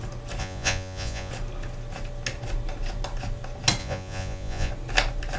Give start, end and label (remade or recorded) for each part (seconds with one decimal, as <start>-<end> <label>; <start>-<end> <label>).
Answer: 0.0-0.4 recorded; 0.4-1.3 remade; 1.3-3.8 recorded; 3.8-4.7 remade; 4.7-5.4 recorded